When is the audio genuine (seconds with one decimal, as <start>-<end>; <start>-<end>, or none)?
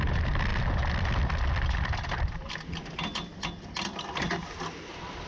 0.0-5.3